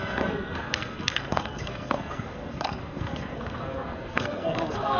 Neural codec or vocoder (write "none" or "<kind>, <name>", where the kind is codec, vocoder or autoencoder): codec, SNAC